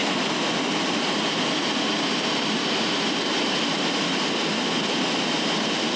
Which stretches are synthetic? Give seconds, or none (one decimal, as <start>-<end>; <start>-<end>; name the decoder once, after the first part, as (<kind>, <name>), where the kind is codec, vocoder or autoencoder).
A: none